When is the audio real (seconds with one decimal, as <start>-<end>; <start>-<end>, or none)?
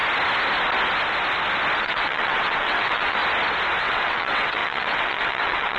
0.0-1.8; 3.2-3.8